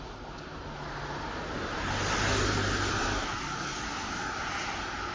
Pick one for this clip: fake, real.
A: real